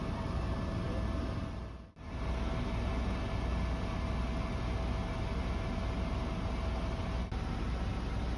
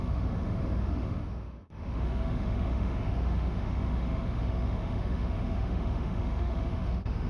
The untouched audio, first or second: first